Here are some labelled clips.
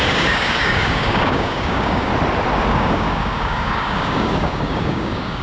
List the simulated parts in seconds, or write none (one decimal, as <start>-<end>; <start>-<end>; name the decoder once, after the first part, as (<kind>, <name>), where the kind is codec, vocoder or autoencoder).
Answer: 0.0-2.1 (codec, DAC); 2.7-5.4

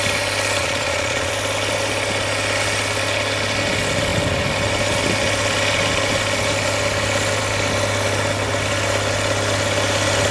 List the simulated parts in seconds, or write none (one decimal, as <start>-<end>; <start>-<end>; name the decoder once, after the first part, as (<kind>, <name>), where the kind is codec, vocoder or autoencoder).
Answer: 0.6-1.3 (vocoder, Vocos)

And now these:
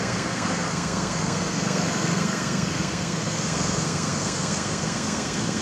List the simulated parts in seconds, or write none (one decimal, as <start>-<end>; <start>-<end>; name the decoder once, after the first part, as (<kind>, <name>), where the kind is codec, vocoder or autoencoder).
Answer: 0.0-5.6 (codec, SNAC)